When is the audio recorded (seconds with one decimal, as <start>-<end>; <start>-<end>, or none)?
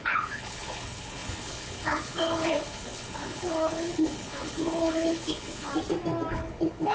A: 5.7-6.3